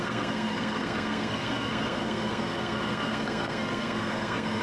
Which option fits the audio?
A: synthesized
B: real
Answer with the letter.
A